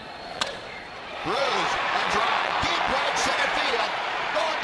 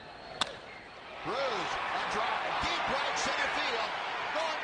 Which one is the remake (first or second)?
first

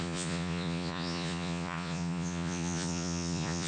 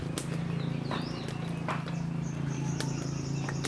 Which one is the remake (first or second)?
first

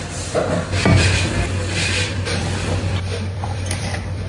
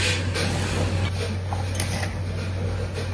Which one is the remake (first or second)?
first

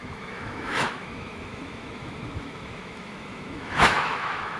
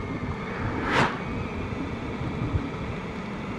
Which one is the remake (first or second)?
first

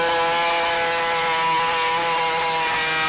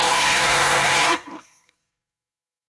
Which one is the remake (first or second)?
second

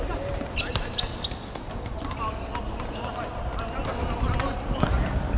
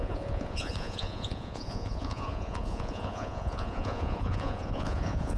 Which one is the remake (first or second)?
second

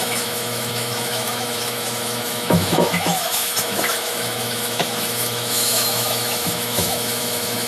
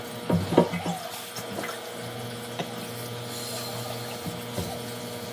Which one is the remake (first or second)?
first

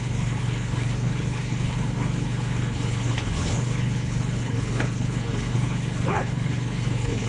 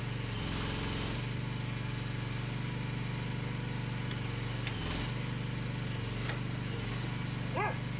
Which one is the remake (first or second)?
first